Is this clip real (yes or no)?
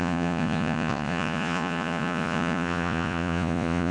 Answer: no